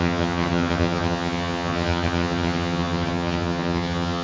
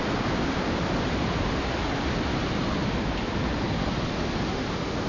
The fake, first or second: first